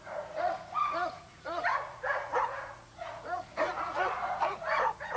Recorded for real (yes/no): no